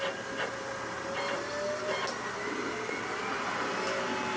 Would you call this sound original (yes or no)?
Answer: yes